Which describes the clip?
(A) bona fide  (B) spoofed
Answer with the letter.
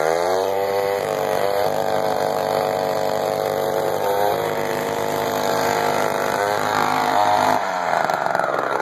B